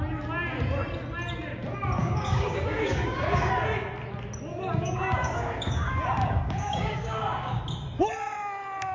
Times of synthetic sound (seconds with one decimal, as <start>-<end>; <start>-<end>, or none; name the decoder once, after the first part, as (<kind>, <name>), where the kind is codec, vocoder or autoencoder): 2.0-3.5 (codec, DAC); 4.5-7.6